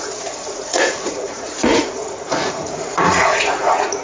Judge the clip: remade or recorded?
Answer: remade